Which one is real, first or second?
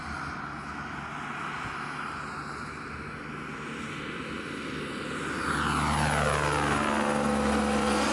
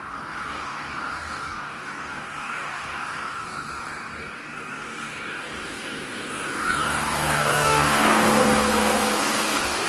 first